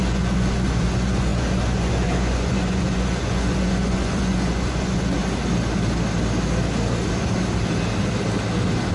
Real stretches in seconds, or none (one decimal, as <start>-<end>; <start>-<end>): 5.2-8.9